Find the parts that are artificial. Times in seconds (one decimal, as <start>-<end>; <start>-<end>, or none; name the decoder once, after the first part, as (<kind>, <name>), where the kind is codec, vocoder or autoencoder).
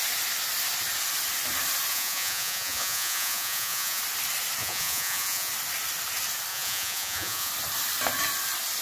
1.9-4.0 (vocoder, Vocos); 4.6-5.5; 6.5-7.5